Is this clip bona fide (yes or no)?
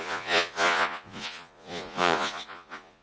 no